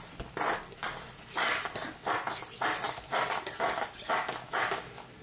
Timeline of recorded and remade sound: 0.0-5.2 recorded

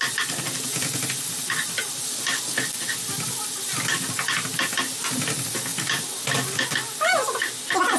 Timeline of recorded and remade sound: 0.0-8.0 recorded

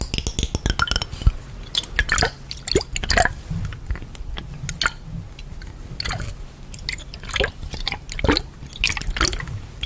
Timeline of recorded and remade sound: 0.0-3.7 recorded; 3.7-4.3 remade; 4.3-9.9 recorded

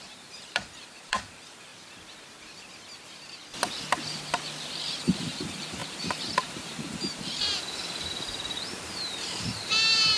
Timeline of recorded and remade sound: 0.0-1.7 remade; 1.7-4.7 recorded; 4.7-10.2 remade